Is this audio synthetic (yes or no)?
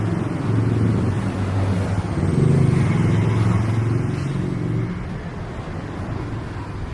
no